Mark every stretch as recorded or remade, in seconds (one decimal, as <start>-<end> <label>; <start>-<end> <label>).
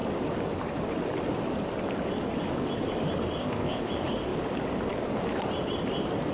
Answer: 0.0-3.4 recorded; 3.4-3.9 remade; 3.9-6.3 recorded